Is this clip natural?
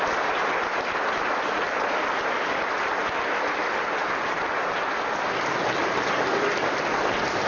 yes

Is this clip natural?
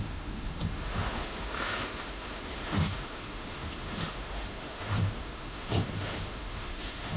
no